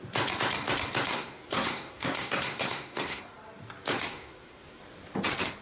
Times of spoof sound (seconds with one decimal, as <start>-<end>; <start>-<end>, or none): 1.1-3.2; 4.1-4.8